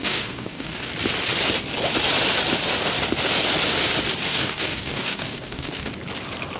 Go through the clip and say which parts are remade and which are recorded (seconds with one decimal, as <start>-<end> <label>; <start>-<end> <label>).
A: 0.0-0.9 remade; 0.9-4.3 recorded; 4.3-5.9 remade; 5.9-6.6 recorded

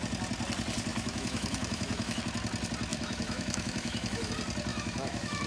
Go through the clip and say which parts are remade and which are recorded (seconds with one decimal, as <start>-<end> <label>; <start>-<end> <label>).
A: 0.0-0.9 recorded; 0.9-2.2 remade; 2.2-2.9 recorded; 2.9-4.3 remade; 4.3-4.7 recorded; 4.7-5.5 remade

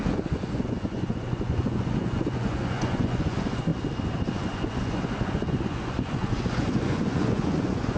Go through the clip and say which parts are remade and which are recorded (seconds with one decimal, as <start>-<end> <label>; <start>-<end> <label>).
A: 0.0-3.7 remade; 3.7-4.3 recorded; 4.3-8.0 remade

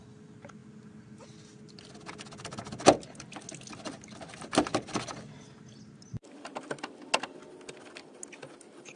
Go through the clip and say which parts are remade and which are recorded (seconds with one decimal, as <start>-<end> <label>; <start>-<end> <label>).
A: 0.0-9.0 recorded

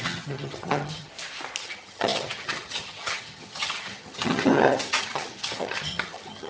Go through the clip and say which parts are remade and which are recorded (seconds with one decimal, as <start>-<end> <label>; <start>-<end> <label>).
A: 0.0-1.1 remade; 1.1-1.6 recorded; 1.6-6.5 remade